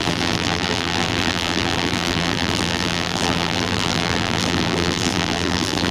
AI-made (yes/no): yes